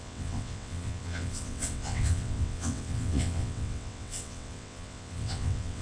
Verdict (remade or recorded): remade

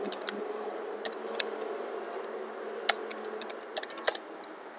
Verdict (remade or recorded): recorded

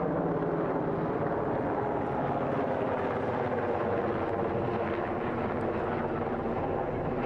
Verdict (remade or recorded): recorded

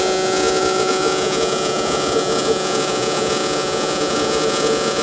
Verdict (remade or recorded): remade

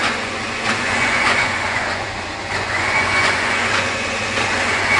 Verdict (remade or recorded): remade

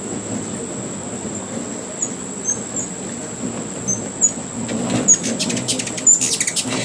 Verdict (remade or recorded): recorded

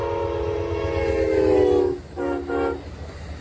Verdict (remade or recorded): recorded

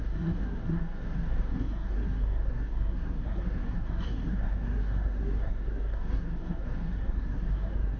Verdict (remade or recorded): remade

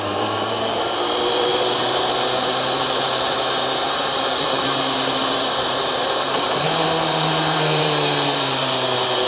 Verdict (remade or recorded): remade